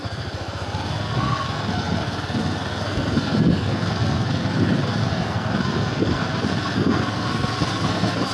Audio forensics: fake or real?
fake